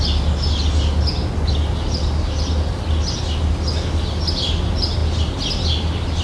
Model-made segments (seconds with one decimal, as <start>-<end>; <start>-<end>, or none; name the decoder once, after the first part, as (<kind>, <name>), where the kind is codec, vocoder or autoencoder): none